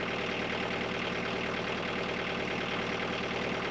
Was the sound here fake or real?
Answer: real